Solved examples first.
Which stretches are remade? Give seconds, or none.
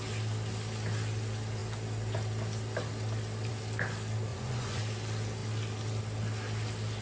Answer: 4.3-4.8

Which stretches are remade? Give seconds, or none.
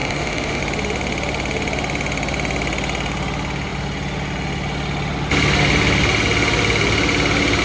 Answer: 0.0-0.6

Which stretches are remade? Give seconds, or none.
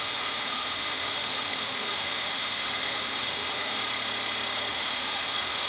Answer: 0.0-3.8; 4.7-5.7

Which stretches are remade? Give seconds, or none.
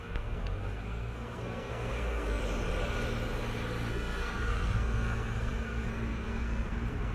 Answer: 0.0-2.4; 3.9-7.1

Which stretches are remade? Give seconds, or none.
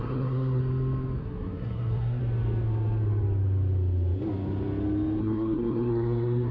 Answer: 0.0-0.6; 1.2-2.2; 5.2-6.5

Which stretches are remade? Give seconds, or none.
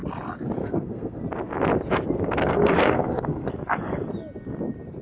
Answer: 0.6-1.2; 2.4-3.5